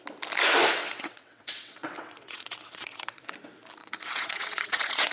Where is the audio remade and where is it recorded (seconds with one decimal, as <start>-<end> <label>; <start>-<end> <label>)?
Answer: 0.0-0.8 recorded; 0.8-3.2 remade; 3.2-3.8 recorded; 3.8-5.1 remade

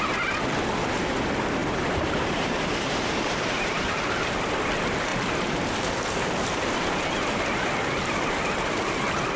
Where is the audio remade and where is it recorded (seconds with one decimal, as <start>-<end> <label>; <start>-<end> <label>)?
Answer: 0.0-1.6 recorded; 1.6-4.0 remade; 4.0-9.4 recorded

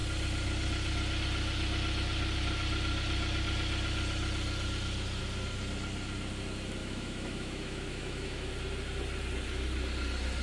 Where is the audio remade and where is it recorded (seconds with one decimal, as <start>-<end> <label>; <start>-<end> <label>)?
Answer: 0.0-6.8 recorded; 6.8-8.5 remade; 8.5-10.4 recorded

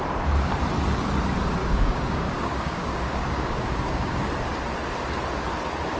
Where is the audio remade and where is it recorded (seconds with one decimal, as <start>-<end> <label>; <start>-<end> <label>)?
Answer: 0.0-1.6 recorded; 1.6-4.3 remade; 4.3-6.0 recorded